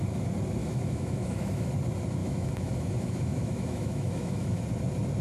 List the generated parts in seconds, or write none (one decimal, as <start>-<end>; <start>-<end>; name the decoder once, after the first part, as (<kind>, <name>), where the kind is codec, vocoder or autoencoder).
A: 0.6-1.7 (autoencoder, DAC-VAE); 2.2-4.6